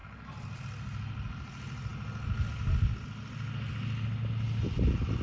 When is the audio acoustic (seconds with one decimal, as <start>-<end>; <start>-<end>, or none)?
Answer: 0.0-5.2